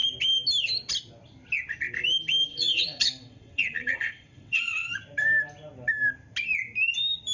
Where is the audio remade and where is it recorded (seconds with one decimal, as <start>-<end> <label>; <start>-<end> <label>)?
0.0-2.5 recorded; 2.5-4.9 remade; 4.9-7.3 recorded